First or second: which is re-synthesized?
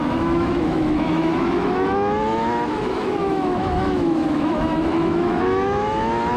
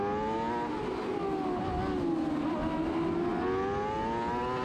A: first